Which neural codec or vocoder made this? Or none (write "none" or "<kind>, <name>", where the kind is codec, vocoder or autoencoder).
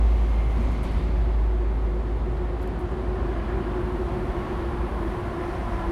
none